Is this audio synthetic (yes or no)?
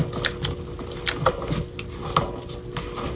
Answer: no